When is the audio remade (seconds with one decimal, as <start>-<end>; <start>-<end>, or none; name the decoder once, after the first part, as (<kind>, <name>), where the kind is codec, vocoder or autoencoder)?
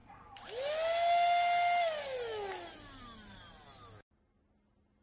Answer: none